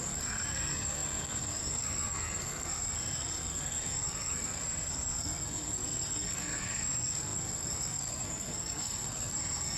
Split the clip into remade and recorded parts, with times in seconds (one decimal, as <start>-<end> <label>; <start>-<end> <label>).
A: 0.0-9.8 remade